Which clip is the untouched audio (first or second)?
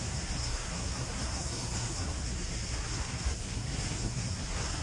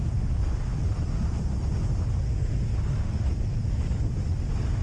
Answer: second